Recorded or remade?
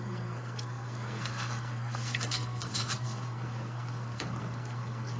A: remade